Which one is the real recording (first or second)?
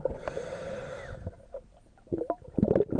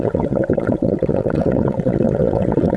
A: first